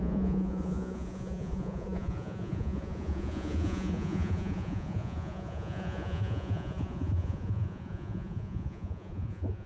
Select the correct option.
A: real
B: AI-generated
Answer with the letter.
B